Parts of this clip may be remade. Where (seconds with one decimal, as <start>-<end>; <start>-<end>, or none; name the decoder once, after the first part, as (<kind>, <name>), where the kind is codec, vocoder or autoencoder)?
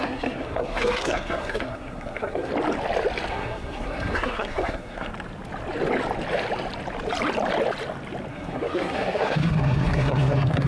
0.0-2.5 (codec, SNAC); 3.3-5.1; 8.3-10.7